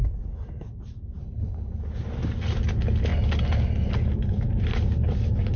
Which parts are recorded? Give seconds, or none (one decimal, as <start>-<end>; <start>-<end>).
0.0-1.2; 1.8-5.6